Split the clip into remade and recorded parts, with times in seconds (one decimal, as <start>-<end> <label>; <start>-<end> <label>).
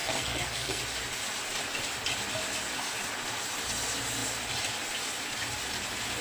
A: 0.0-0.8 remade; 0.8-6.2 recorded